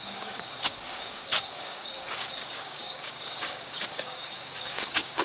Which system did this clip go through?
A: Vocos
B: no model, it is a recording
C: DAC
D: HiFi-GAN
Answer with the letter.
C